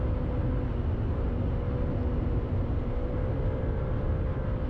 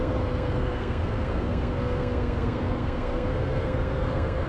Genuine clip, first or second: first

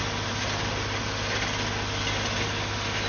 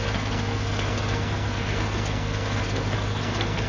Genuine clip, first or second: first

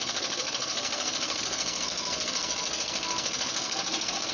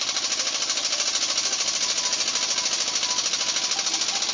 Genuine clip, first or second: second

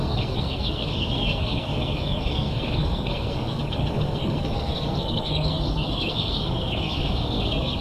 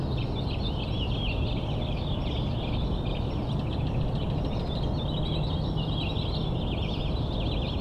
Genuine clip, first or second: second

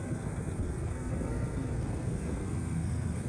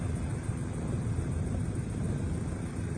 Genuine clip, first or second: second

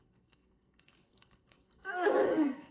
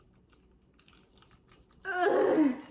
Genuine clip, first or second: second